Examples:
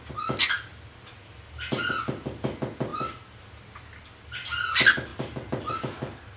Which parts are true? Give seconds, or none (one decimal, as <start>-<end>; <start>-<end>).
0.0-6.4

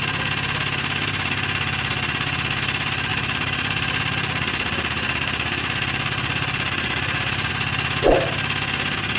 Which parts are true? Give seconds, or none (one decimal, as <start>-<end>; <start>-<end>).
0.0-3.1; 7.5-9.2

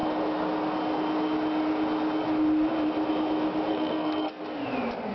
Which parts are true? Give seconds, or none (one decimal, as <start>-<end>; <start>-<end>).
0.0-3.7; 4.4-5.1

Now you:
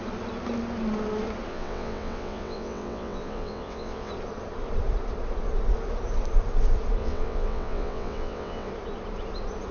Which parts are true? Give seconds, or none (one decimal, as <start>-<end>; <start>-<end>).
0.0-1.5; 4.1-7.0; 8.7-9.7

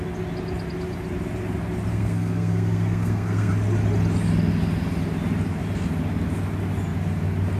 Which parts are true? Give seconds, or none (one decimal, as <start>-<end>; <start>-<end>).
0.0-1.9; 3.5-7.6

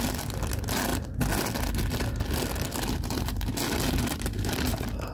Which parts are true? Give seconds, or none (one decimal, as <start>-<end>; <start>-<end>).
0.0-5.1